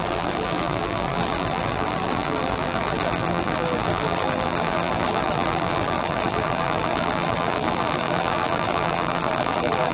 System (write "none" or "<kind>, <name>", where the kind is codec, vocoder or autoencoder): vocoder, BigVGAN v2